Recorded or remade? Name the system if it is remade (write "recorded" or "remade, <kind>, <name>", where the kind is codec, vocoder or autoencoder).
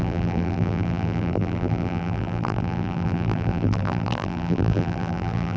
remade, vocoder, BigVGAN v2